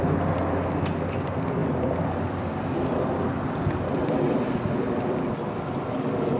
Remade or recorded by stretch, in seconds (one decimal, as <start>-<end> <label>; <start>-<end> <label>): 0.0-1.6 recorded; 1.6-5.4 remade; 5.4-6.4 recorded

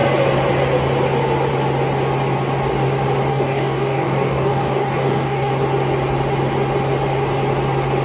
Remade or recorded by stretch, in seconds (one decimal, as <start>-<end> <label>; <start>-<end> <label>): 0.0-3.3 recorded; 3.3-5.5 remade; 5.5-8.0 recorded

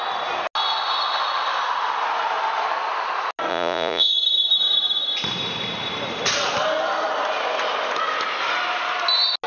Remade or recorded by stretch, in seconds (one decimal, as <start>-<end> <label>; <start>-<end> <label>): 0.0-3.5 recorded; 3.5-4.1 remade; 4.1-9.5 recorded

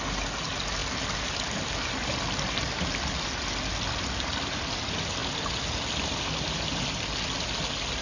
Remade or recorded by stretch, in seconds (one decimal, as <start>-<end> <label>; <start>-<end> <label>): 0.0-8.0 recorded

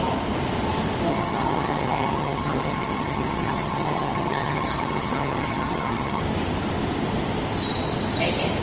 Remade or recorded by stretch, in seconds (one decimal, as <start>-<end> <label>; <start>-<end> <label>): 0.0-1.1 recorded; 1.1-6.2 remade; 6.2-8.6 recorded

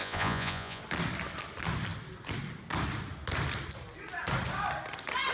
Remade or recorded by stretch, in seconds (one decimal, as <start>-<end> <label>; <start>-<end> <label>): 0.0-0.8 remade; 0.8-5.3 recorded

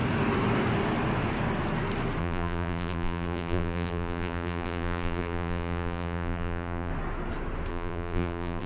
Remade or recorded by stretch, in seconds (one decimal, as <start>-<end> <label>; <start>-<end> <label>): 0.0-2.2 recorded; 2.2-6.9 remade; 6.9-7.7 recorded; 7.7-8.7 remade

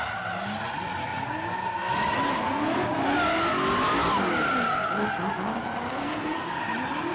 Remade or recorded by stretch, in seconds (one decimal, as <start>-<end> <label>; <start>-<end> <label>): 0.0-6.0 recorded; 6.0-6.6 remade; 6.6-7.1 recorded